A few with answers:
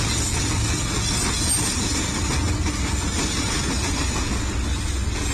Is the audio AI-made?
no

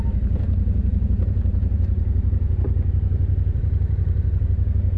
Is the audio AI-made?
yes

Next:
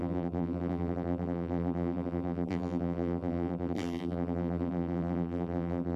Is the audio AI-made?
yes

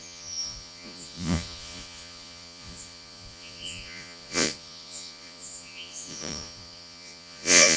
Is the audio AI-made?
yes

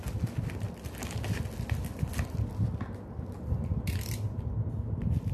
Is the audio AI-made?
no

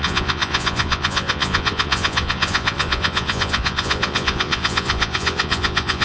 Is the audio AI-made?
yes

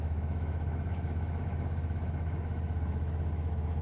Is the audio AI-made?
yes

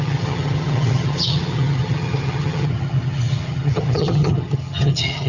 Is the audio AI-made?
yes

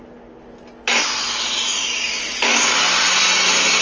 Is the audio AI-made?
no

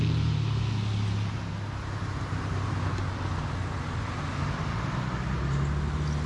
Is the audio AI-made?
no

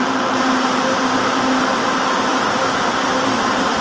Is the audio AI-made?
yes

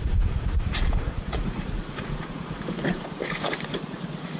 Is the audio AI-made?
yes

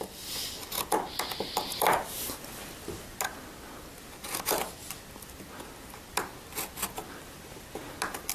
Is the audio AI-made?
no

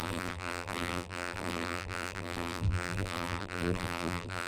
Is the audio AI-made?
yes